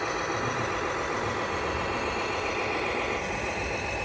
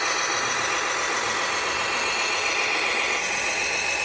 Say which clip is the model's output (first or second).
first